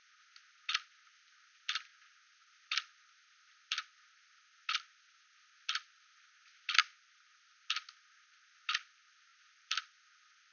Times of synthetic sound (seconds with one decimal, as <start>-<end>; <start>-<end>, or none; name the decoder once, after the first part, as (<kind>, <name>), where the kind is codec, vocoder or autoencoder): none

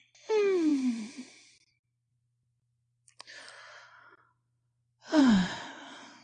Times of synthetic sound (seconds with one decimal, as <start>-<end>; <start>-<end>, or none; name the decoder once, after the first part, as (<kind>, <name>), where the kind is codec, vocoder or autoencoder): none

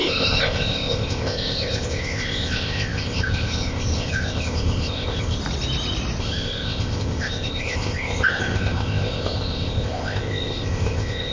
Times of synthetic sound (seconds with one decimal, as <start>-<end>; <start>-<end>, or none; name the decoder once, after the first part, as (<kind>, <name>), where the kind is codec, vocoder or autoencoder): 0.0-5.4 (codec, ZipCodec); 6.2-11.3

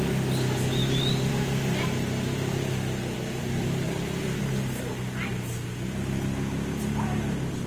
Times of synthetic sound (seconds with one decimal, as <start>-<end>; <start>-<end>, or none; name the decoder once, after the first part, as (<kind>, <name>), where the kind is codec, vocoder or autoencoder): 0.8-1.3 (vocoder, BigVGAN v2); 3.4-4.4

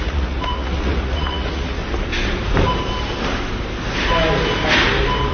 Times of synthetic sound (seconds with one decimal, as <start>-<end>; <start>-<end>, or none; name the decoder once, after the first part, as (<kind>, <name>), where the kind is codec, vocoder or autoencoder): 0.0-1.8 (vocoder, Vocos)

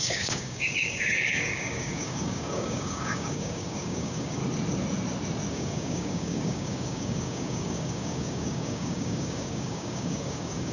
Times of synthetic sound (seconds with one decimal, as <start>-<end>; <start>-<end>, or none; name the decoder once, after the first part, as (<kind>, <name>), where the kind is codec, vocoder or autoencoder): 0.0-4.4 (codec, DAC); 5.5-10.7

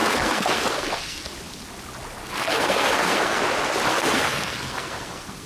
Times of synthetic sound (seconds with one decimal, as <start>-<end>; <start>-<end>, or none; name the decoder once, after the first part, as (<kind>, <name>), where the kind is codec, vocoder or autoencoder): 0.0-1.3 (codec, SNAC); 2.2-3.4; 3.9-5.5